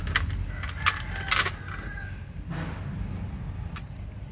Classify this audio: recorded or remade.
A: recorded